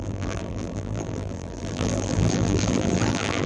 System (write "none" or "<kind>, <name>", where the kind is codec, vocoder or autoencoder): vocoder, BigVGAN v2